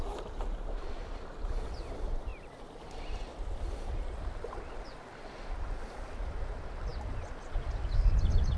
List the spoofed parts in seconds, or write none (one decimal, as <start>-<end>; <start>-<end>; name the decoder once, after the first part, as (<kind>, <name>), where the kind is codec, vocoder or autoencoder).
none